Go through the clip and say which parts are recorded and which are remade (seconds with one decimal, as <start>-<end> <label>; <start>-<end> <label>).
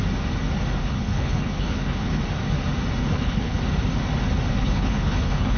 0.0-0.8 recorded; 0.8-2.2 remade; 2.2-3.0 recorded; 3.0-3.6 remade; 3.6-4.5 recorded; 4.5-5.6 remade